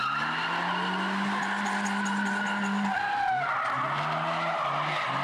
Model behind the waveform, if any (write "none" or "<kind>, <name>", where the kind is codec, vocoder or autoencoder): none